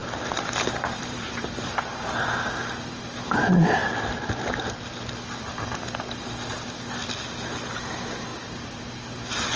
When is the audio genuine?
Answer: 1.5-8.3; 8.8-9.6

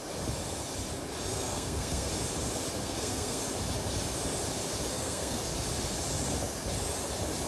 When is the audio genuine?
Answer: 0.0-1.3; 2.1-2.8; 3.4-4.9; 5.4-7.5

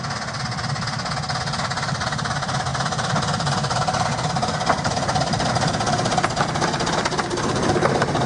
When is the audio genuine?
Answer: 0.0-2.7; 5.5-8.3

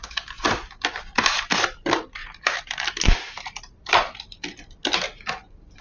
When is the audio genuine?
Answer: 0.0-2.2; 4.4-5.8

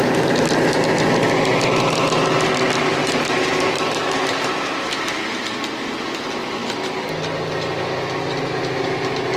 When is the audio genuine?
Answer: 0.0-3.0; 4.5-9.4

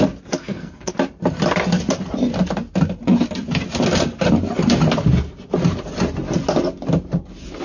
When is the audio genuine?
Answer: 0.0-0.4; 0.9-7.6